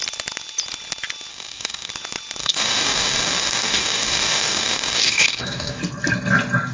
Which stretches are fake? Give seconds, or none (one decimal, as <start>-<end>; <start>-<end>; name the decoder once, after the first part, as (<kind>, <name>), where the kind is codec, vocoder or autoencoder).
1.3-1.9 (codec, DAC); 2.4-5.8